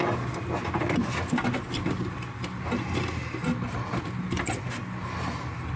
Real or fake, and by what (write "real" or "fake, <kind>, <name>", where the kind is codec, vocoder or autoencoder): real